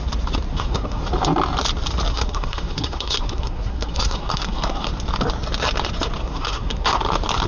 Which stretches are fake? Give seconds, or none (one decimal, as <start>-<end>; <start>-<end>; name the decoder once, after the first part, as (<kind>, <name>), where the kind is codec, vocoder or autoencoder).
0.5-1.0 (codec, SNAC); 2.1-4.9; 6.2-7.0

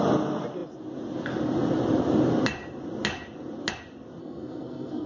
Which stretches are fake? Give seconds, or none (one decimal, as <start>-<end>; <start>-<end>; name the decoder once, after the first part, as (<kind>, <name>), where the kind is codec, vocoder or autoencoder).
4.2-5.1 (codec, SNAC)

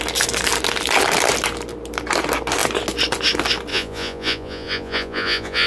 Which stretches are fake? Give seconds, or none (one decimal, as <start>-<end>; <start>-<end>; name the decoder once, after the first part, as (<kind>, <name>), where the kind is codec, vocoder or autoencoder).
3.7-5.7 (vocoder, Vocos)

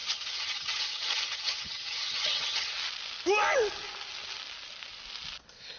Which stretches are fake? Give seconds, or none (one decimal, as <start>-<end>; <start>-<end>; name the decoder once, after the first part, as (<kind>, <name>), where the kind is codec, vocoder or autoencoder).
0.0-2.7 (vocoder, HiFi-GAN)

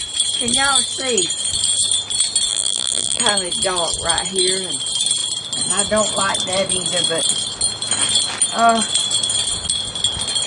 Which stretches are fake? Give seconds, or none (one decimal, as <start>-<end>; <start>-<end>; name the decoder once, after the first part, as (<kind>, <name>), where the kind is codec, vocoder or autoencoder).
2.5-3.2 (vocoder, BigVGAN v2)

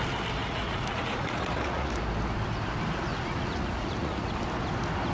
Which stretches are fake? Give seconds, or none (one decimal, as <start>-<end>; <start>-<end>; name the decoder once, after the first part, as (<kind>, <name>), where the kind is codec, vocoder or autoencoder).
0.4-1.9 (vocoder, Vocos); 3.1-4.3

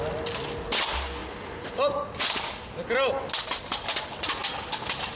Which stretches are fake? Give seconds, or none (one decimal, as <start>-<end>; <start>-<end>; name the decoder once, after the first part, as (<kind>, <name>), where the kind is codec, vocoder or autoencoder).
none